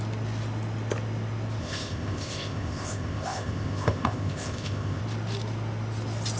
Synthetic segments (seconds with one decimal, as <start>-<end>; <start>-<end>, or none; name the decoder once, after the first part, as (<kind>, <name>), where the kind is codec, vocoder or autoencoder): 1.6-5.0 (codec, ZipCodec)